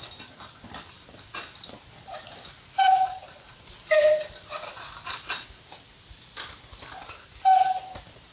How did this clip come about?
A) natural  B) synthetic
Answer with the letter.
A